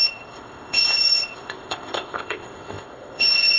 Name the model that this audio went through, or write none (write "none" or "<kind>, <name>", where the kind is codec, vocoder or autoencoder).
codec, ZipCodec